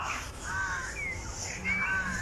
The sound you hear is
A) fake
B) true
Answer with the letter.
A